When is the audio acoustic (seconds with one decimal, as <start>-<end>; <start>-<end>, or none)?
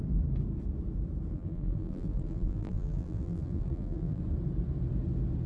0.0-1.3; 4.2-5.5